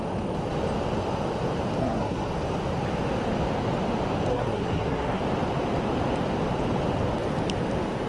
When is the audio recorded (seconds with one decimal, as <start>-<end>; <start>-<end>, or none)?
0.0-1.8; 2.3-4.3; 5.2-8.1